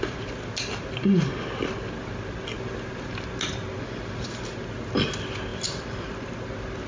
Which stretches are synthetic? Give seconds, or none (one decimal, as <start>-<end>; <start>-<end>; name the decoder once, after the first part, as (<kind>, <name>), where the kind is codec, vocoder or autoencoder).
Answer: 5.5-6.3 (vocoder, BigVGAN v2)